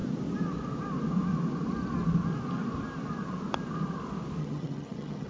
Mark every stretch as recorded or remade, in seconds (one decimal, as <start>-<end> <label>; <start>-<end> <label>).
0.0-4.4 recorded; 4.4-5.3 remade